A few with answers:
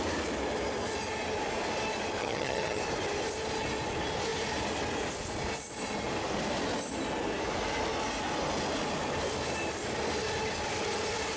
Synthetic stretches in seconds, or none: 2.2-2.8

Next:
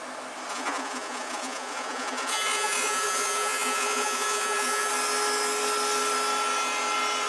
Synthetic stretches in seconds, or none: 0.5-4.9

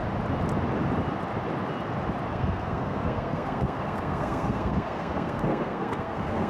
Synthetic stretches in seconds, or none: 2.3-6.5

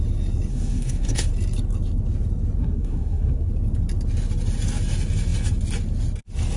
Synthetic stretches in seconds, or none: 0.5-1.3; 2.6-3.5

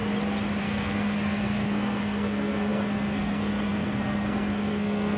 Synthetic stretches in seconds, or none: 0.6-5.2